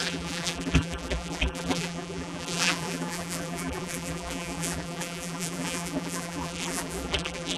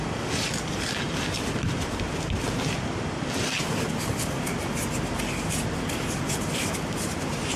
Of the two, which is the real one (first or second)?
second